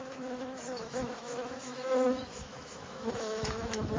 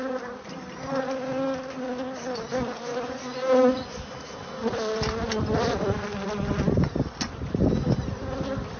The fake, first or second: first